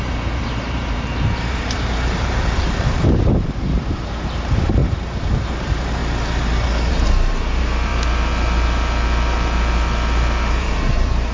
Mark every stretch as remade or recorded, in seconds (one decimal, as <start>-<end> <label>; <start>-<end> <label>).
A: 0.0-6.0 remade; 6.0-6.9 recorded; 6.9-7.9 remade; 7.9-10.5 recorded; 10.5-11.3 remade